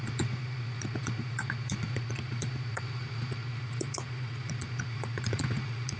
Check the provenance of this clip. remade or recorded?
remade